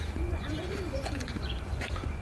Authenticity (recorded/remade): remade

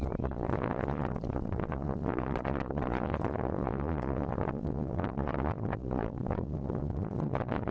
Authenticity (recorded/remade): remade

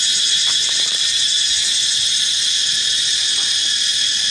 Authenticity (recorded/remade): recorded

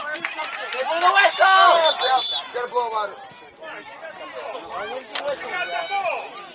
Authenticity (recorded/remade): recorded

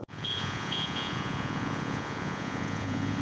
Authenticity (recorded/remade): remade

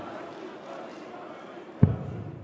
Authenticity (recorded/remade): recorded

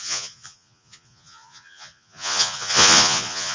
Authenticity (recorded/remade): remade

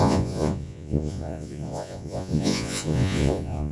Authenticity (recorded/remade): remade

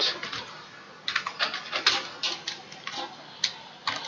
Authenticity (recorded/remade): recorded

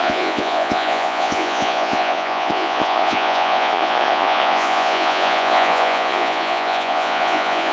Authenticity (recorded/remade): remade